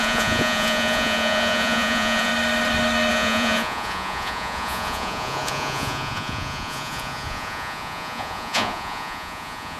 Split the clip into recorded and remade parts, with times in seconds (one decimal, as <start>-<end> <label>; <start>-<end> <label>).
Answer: 0.0-2.3 remade; 2.3-3.1 recorded; 3.1-9.8 remade